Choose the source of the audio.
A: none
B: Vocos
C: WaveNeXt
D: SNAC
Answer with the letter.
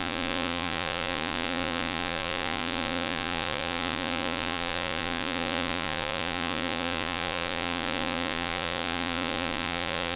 B